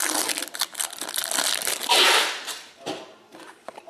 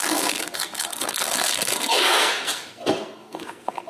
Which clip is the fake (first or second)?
second